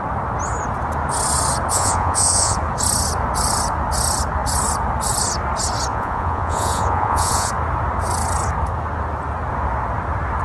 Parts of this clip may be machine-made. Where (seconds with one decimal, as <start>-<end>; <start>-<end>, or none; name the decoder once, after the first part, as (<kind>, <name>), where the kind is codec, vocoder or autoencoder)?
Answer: 1.7-2.6 (vocoder, Vocos); 5.9-7.5